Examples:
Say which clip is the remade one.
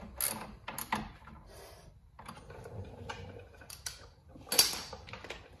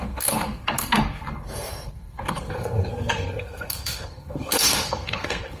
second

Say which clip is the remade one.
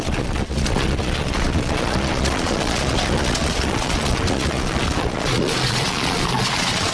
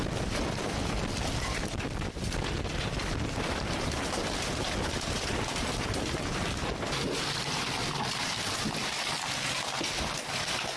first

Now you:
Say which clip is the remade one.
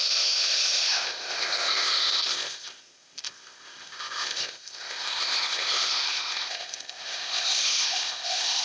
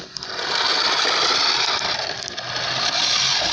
first